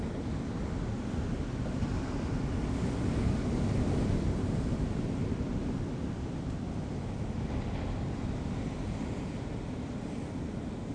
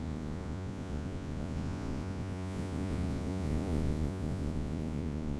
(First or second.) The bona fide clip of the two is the first